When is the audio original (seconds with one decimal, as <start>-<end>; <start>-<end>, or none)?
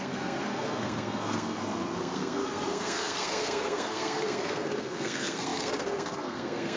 none